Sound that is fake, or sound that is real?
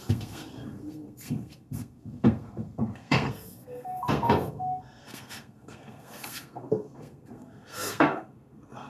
fake